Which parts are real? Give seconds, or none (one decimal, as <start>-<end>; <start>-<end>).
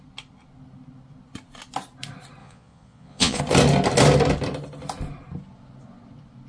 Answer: 0.0-2.4; 3.4-6.5